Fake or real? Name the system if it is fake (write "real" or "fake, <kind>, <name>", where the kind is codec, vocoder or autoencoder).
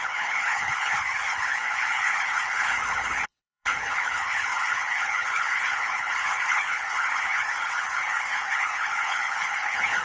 fake, codec, HILCodec